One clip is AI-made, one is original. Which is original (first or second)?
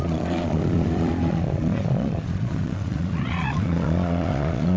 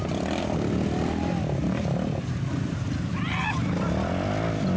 second